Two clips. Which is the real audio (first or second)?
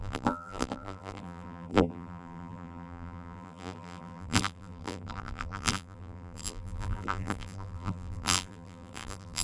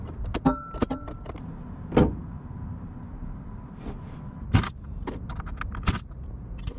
second